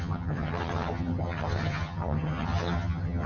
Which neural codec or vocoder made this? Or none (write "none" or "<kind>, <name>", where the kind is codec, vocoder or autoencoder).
vocoder, HiFi-GAN